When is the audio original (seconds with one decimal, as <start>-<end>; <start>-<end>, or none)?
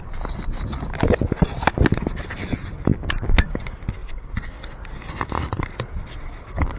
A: 0.0-6.8